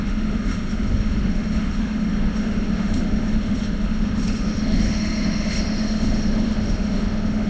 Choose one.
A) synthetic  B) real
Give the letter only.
A